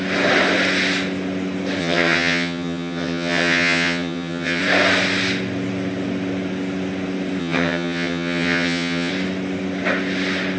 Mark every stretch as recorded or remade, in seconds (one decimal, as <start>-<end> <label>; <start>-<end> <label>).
0.0-1.8 recorded; 1.8-4.6 remade; 4.6-7.4 recorded; 7.4-9.1 remade; 9.1-10.6 recorded